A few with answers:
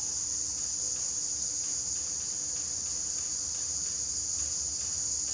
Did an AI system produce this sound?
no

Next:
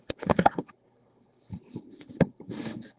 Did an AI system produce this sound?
yes